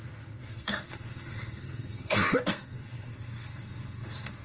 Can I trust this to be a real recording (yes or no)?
no